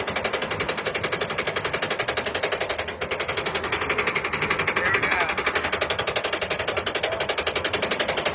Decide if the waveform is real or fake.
real